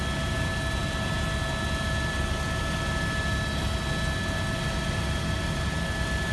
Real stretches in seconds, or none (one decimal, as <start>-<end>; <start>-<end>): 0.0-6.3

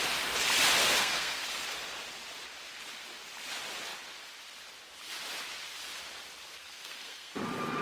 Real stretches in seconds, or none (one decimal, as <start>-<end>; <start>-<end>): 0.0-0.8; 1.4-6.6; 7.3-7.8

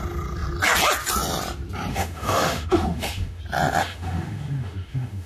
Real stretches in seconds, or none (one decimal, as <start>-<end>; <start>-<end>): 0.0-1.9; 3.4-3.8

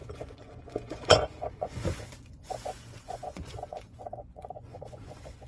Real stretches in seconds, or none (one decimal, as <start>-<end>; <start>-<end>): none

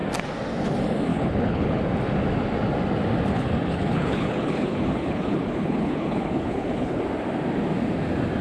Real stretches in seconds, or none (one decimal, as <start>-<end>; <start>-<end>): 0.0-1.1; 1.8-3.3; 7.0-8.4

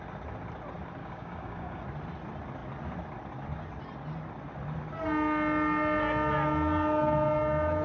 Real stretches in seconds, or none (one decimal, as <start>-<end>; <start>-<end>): 0.0-1.0; 1.8-7.8